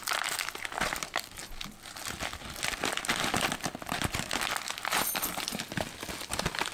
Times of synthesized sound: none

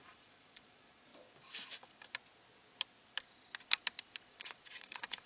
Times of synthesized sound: 0.0-1.1 (vocoder, Vocos); 4.3-5.3

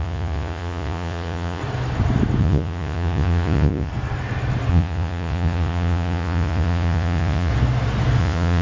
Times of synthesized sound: 0.0-1.6 (vocoder, Vocos); 2.4-3.9; 4.7-7.5; 8.2-8.6

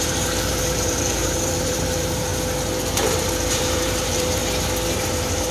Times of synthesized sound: 0.0-2.3 (vocoder, BigVGAN v2); 3.5-4.4; 5.0-5.5

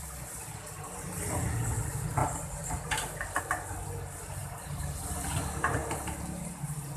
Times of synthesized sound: 2.2-3.4 (vocoder, BigVGAN v2); 4.4-5.3

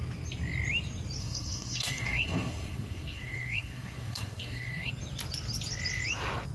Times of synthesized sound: 1.2-4.9 (codec, SNAC)

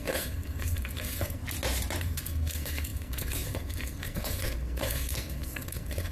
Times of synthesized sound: 0.0-1.4 (codec, SNAC); 2.0-6.1

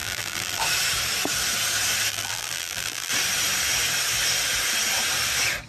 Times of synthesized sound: 0.0-0.6 (vocoder, BigVGAN v2); 2.1-3.1